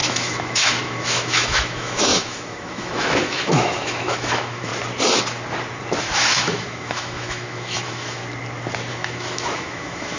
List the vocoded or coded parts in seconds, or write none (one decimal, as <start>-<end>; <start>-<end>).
0.0-4.7; 6.0-8.2; 8.9-10.2